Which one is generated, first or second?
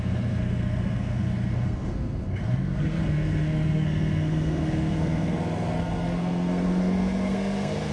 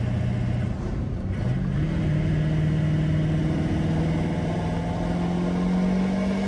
first